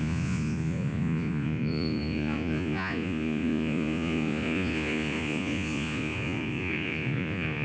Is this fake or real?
fake